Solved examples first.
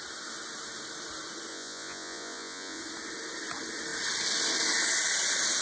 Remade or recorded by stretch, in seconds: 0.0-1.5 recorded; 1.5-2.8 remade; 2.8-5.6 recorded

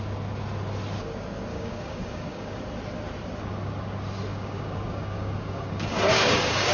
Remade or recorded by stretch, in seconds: 0.0-1.5 recorded; 1.5-2.6 remade; 2.6-4.3 recorded; 4.3-6.7 remade

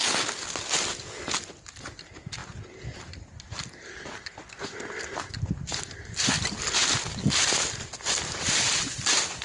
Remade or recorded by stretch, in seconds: 0.0-9.4 recorded

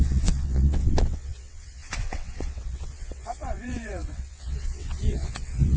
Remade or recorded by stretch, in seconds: 0.0-5.8 remade

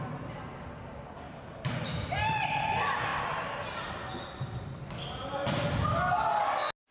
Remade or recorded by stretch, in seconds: 0.0-6.9 recorded

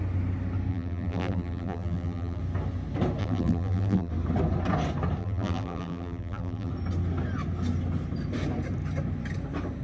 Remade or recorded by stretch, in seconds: 0.0-0.7 recorded; 0.7-2.4 remade; 2.4-3.2 recorded; 3.2-4.1 remade; 4.1-5.2 recorded; 5.2-6.7 remade; 6.7-9.8 recorded